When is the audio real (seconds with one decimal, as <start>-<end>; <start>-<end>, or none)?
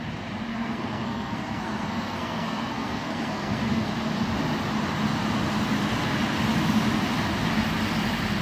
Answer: 0.0-0.5; 3.9-8.4